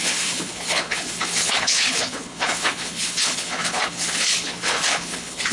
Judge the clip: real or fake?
fake